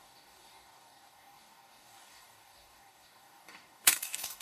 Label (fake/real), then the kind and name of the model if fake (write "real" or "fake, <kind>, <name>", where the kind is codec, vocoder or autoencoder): fake, codec, DAC